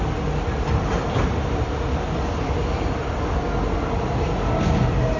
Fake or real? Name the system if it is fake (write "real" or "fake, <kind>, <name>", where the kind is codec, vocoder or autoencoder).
real